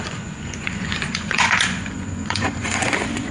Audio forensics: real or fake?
fake